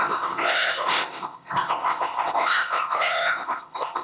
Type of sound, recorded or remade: remade